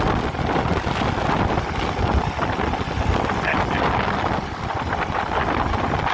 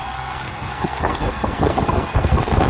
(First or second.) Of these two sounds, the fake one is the second